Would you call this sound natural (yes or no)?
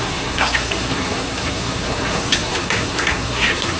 no